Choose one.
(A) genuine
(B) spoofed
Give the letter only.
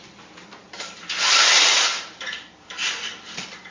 A